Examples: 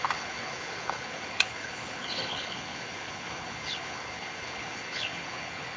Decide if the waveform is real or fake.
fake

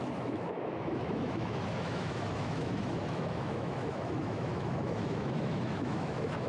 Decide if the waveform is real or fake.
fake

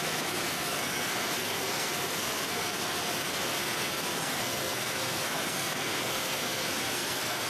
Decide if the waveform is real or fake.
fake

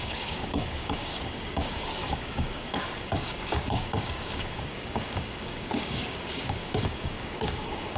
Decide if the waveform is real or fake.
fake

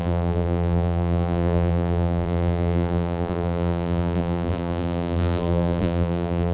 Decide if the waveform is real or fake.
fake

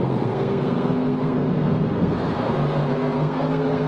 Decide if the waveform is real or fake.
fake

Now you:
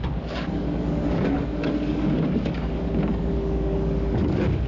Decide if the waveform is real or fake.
fake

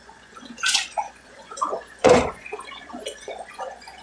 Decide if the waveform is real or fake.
fake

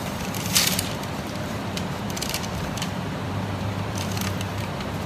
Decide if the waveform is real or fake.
fake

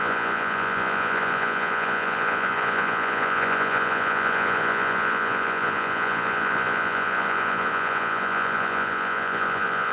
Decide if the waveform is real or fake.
fake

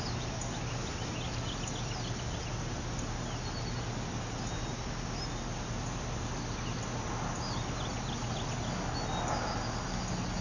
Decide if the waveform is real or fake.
real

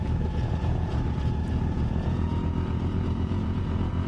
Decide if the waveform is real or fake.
fake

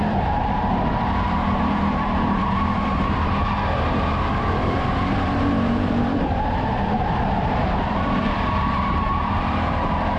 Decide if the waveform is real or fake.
fake